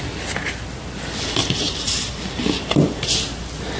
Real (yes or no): yes